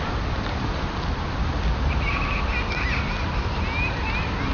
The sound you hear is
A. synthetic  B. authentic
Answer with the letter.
B